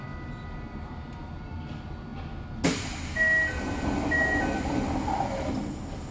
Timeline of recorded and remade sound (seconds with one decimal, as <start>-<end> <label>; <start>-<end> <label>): 0.0-6.1 recorded